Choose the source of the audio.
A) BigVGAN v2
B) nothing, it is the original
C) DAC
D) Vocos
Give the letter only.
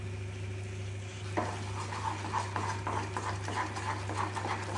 B